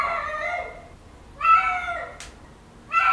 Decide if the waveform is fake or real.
real